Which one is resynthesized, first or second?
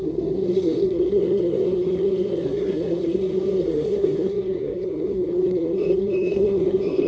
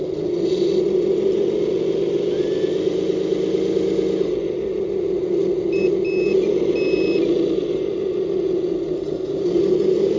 first